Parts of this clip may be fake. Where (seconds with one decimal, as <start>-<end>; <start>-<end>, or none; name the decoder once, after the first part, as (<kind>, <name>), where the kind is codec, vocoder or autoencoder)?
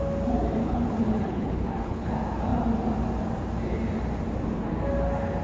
0.6-2.1 (codec, HILCodec)